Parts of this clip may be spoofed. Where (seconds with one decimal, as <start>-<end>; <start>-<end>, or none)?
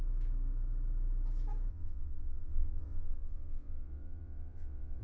1.7-5.0